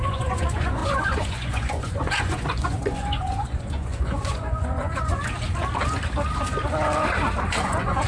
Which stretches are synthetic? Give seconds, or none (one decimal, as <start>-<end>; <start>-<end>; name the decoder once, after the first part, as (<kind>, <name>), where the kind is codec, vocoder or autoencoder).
0.0-5.1 (vocoder, Vocos); 7.6-8.1